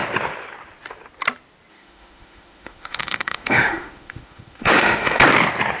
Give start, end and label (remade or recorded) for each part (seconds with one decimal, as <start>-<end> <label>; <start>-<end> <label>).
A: 0.0-1.7 recorded; 1.7-5.2 remade; 5.2-5.8 recorded